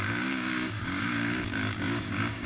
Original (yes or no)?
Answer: no